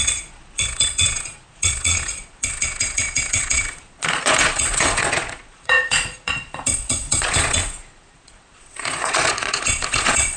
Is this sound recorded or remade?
remade